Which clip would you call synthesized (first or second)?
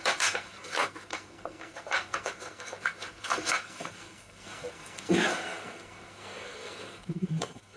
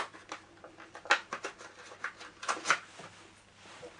first